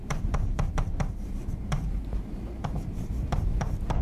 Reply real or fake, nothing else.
fake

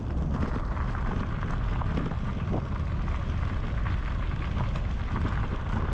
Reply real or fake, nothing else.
real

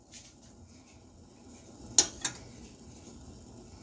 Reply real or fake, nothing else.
real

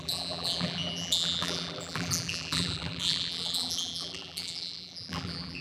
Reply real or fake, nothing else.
fake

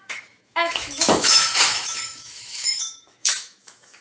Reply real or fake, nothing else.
fake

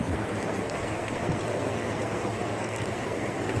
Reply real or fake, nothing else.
fake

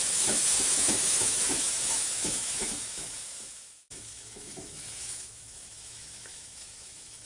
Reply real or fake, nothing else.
fake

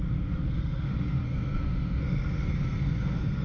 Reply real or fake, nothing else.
fake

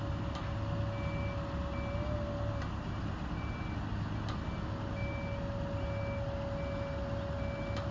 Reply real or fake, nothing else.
real